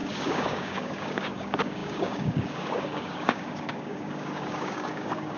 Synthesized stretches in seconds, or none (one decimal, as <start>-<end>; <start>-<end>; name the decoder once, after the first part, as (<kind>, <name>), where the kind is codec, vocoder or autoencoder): 0.0-5.4 (codec, DAC)